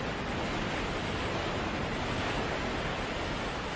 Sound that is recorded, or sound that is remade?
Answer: recorded